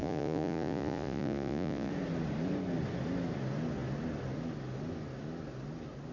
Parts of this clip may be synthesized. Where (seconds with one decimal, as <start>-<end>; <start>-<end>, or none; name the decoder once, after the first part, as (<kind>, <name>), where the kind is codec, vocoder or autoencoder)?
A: 0.0-1.9 (vocoder, Vocos)